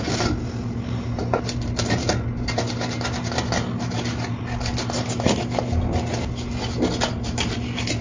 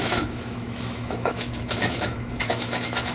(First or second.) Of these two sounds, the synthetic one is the second